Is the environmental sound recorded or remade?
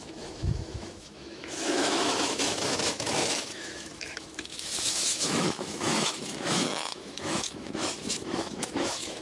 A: remade